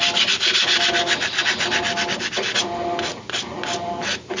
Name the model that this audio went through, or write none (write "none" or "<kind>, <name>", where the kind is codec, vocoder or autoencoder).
none